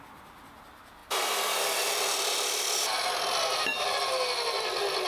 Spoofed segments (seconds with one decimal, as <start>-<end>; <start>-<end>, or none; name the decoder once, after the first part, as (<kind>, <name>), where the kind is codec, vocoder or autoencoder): none